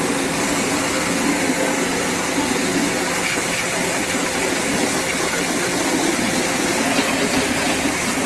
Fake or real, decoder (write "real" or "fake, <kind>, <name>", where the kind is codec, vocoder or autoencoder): real